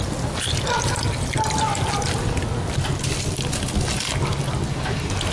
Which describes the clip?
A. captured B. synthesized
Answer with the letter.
A